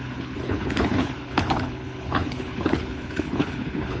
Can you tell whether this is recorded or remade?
remade